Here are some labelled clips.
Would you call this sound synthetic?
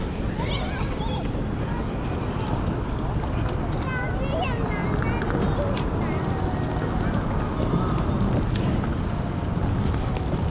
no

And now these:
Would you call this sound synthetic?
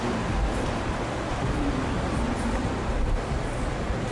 yes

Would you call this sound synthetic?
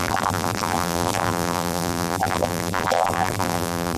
yes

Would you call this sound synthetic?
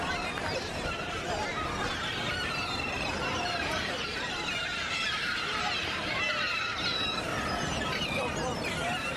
yes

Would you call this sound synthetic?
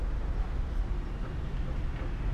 no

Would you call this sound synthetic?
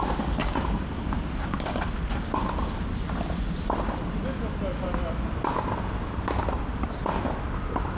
no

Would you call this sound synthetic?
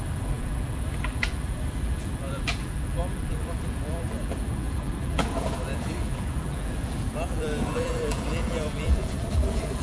yes